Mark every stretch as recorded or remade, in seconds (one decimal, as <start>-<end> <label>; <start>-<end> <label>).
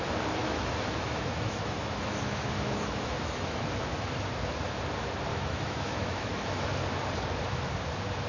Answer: 0.0-0.4 recorded; 0.4-4.1 remade; 4.1-5.3 recorded; 5.3-6.7 remade; 6.7-8.3 recorded